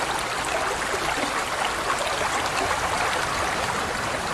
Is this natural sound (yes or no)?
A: yes